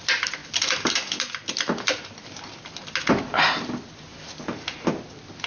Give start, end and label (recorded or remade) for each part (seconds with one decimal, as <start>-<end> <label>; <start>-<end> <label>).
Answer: 0.0-5.5 recorded